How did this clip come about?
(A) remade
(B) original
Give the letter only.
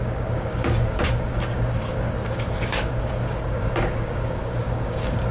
A